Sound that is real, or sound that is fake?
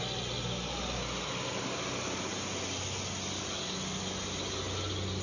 real